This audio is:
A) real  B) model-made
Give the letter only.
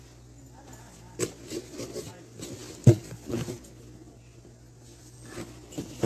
A